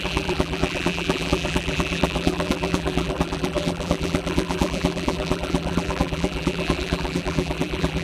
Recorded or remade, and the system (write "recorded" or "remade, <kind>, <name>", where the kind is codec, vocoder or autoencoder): remade, vocoder, BigVGAN v2